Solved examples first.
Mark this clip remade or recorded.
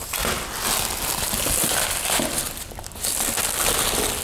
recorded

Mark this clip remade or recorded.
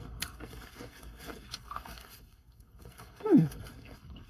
remade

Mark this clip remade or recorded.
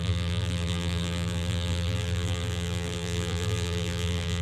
remade